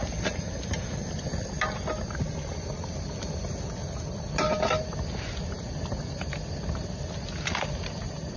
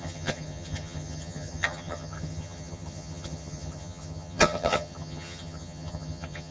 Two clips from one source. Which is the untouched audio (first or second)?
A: first